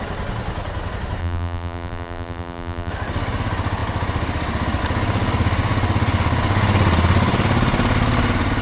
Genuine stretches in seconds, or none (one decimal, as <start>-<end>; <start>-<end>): 0.0-1.2; 2.9-8.6

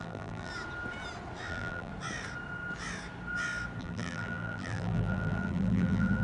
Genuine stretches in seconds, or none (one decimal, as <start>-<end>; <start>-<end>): 0.5-1.5; 1.9-3.8

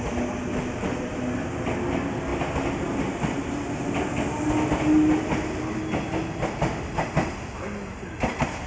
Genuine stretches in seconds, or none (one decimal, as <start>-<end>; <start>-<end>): 0.0-8.7

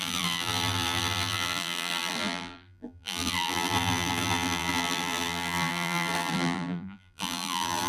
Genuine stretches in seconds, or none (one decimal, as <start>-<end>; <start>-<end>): none